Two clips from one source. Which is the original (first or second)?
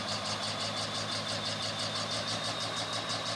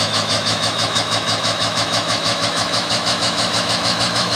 first